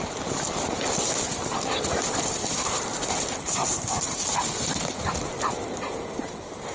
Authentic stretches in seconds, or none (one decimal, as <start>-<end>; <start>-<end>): 0.0-6.7